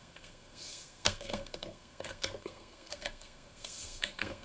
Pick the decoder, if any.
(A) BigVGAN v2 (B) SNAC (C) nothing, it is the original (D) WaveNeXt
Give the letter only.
B